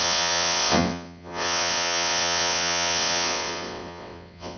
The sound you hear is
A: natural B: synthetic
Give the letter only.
B